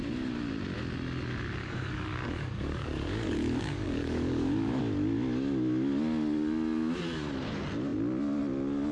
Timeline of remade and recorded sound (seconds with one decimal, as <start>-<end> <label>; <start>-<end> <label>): 0.0-1.6 recorded; 1.6-4.8 remade; 4.8-8.9 recorded